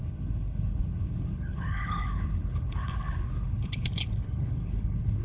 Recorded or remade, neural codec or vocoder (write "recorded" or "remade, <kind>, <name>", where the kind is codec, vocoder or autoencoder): remade, codec, HILCodec